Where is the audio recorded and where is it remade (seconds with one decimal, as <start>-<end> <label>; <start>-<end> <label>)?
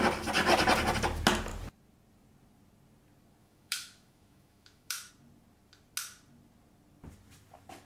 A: 0.0-3.4 recorded; 3.4-5.1 remade; 5.1-7.8 recorded